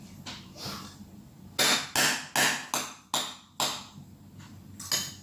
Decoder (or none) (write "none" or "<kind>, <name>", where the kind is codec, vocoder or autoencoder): none